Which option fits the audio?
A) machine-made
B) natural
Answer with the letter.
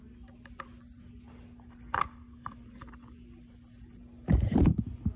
B